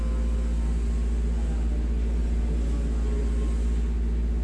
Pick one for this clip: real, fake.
real